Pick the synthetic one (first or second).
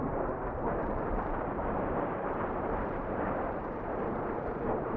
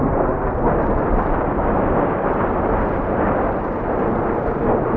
first